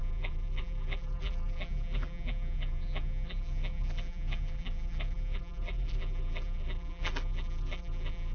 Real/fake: fake